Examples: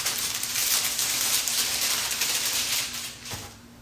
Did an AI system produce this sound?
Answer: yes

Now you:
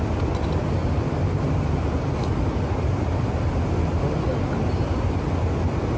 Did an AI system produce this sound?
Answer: no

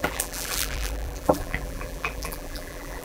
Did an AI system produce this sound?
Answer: yes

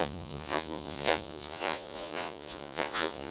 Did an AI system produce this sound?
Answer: yes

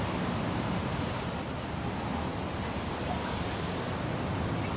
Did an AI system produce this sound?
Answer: no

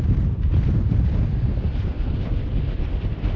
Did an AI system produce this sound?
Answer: no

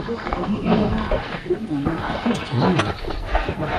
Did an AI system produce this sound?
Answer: yes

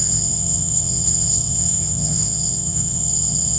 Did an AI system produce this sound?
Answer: yes